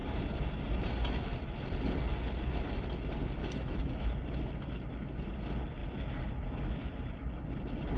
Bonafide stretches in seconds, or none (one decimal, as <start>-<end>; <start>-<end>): 0.0-3.4; 4.1-8.0